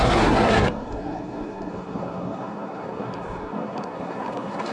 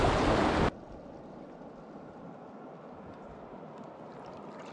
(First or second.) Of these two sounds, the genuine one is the second